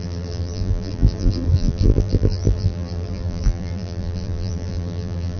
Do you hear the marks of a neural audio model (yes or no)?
yes